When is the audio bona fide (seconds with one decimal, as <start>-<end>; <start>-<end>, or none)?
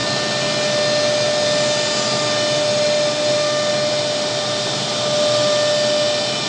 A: 0.0-6.5